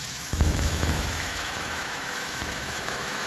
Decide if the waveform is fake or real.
fake